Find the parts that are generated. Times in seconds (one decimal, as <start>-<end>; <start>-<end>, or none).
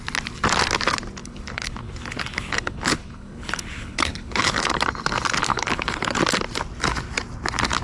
1.2-4.7; 5.5-6.2